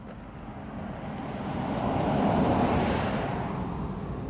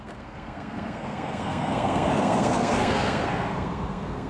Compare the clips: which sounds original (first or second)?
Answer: first